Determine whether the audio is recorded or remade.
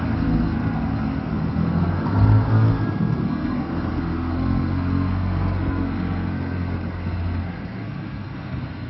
remade